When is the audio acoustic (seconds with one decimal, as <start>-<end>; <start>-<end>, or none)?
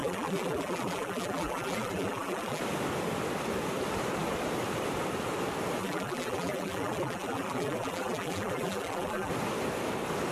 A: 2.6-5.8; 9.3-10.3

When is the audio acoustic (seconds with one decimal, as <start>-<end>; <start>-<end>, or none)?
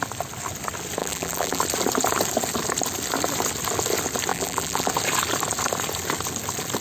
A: 0.0-1.0; 1.6-4.3; 4.9-6.8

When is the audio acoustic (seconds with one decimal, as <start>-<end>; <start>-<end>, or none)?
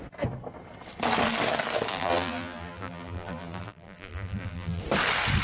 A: 0.0-1.9; 4.8-5.4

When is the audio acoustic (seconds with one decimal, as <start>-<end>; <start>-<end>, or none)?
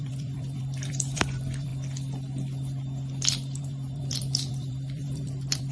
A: 1.7-3.6